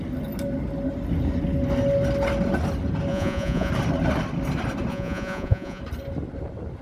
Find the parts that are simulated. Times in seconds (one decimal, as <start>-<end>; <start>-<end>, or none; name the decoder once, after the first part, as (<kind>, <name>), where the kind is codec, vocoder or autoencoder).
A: 3.1-3.7 (vocoder, Vocos); 4.9-5.8